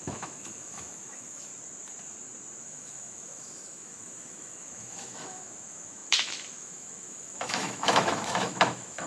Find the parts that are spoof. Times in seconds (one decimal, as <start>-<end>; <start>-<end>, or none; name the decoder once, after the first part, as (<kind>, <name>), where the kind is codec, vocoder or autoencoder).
0.0-1.5 (autoencoder, DAC-VAE); 2.6-9.1

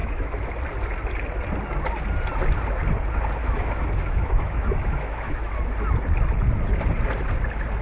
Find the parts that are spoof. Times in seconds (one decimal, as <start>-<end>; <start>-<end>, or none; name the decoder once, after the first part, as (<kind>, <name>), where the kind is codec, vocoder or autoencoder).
0.0-0.5 (autoencoder, DAC-VAE); 3.4-5.5